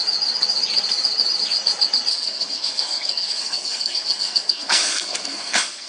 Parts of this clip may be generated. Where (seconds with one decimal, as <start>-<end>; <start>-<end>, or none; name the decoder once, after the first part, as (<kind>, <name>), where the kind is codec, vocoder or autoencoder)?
2.1-5.9 (codec, SNAC)